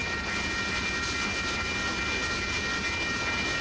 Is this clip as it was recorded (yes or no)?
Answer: yes